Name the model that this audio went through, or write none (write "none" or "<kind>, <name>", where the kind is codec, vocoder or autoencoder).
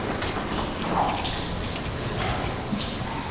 none